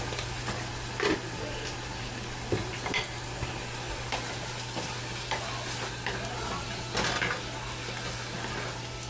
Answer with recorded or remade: recorded